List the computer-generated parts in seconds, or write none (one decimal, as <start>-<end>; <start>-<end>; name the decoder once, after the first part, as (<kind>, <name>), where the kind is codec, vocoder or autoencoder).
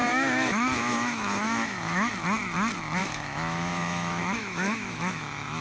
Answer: 0.0-2.1 (autoencoder, DAC-VAE); 3.0-5.6